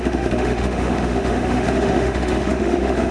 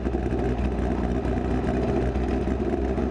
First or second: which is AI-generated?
first